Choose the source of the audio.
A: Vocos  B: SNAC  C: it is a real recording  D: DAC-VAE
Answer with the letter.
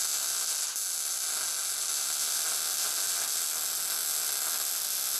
C